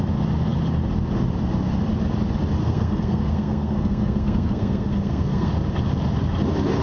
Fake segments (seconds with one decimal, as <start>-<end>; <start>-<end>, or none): 2.6-5.5

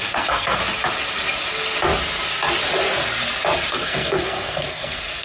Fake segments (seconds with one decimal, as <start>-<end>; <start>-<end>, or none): 0.0-0.6; 3.7-5.2

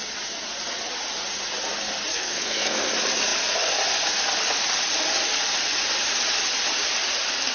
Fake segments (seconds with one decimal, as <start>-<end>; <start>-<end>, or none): 2.1-2.9

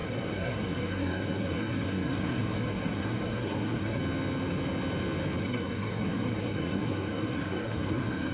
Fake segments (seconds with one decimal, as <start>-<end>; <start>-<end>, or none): 0.0-4.0; 5.4-8.3

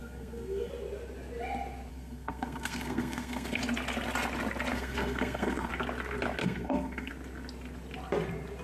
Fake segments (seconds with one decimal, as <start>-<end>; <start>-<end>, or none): 0.0-0.7; 1.9-3.6; 4.7-5.7; 6.4-7.1